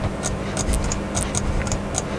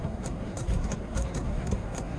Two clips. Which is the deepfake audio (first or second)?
second